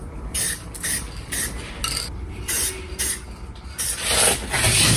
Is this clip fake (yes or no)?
no